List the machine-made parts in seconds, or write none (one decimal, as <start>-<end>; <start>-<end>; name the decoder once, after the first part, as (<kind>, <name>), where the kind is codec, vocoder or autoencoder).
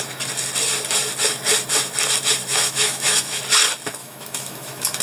2.5-3.4 (autoencoder, DAC-VAE); 4.0-5.0